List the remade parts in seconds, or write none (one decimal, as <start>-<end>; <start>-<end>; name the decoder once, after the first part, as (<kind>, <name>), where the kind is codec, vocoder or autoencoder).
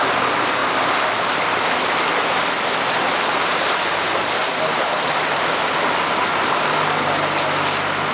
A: 4.4-5.7 (vocoder, BigVGAN v2)